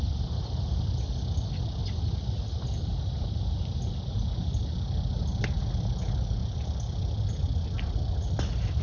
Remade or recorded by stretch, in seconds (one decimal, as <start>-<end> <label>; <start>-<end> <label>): 0.0-8.8 recorded